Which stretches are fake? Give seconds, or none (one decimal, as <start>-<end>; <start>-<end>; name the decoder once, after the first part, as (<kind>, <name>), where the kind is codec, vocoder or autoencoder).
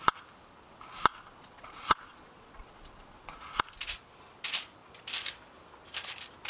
1.1-3.6 (vocoder, Vocos)